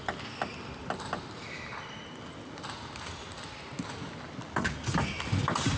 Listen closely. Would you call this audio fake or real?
real